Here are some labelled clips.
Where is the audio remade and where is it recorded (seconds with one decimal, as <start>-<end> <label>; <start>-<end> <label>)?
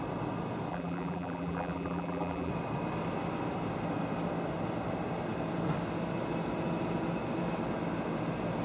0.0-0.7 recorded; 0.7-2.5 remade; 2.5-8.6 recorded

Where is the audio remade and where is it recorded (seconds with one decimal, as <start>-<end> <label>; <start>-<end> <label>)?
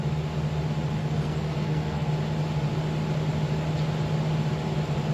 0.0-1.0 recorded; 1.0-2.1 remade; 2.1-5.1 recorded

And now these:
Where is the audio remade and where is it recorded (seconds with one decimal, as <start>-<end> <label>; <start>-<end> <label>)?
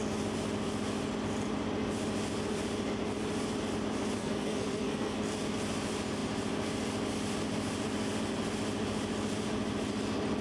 0.0-4.2 recorded; 4.2-5.2 remade; 5.2-10.4 recorded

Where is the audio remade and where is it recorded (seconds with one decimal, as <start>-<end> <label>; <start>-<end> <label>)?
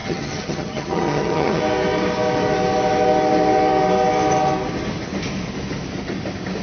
0.0-1.6 remade; 1.6-6.6 recorded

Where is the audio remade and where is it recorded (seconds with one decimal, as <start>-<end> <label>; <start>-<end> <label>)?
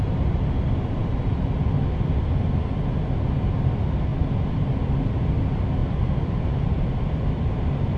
0.0-8.0 recorded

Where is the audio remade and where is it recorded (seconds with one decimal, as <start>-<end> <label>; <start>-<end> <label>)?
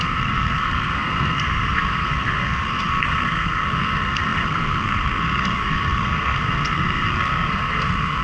0.0-8.2 remade